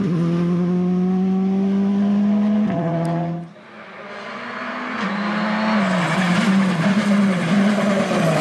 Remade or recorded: recorded